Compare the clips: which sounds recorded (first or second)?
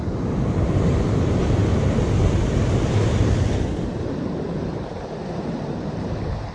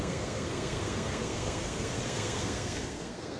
first